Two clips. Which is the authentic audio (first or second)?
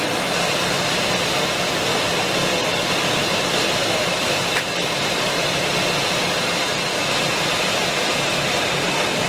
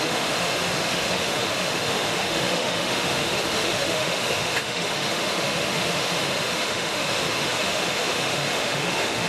first